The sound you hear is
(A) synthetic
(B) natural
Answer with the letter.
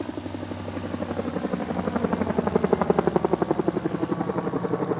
B